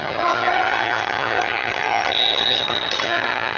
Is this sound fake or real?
fake